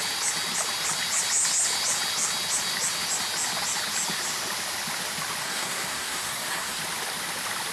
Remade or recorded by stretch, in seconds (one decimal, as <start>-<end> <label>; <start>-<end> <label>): 0.0-5.4 recorded; 5.4-6.8 remade; 6.8-7.7 recorded